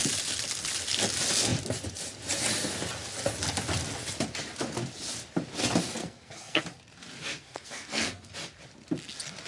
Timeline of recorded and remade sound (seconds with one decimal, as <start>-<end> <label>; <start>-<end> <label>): 0.0-6.0 recorded; 6.0-6.6 remade; 6.6-7.2 recorded; 7.2-8.3 remade; 8.3-9.5 recorded

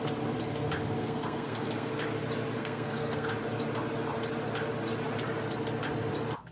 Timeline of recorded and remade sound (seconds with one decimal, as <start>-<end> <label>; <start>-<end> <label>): 0.0-1.0 recorded; 1.0-1.9 remade; 1.9-2.6 recorded; 2.6-3.3 remade; 3.3-6.5 recorded

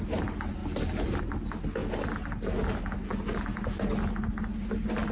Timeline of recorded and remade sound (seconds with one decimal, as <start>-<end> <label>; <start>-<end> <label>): 0.0-5.1 recorded